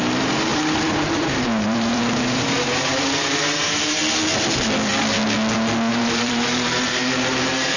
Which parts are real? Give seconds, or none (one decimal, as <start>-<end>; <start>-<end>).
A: 4.0-5.9